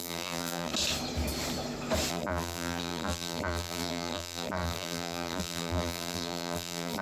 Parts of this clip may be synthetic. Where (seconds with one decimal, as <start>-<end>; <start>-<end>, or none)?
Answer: 0.0-0.7; 2.1-7.0